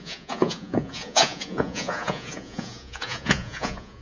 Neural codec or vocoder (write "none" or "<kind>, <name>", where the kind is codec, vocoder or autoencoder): vocoder, Vocos